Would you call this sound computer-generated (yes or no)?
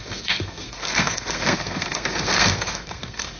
yes